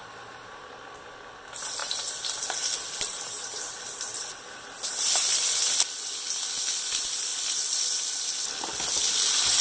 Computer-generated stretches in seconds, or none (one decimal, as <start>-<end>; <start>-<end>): 0.0-0.8; 1.8-5.4